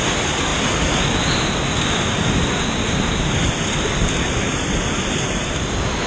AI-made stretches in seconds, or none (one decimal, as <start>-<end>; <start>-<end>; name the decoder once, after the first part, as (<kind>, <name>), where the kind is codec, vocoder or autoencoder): none